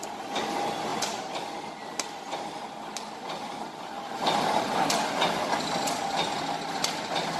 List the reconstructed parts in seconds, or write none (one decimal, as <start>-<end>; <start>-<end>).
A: none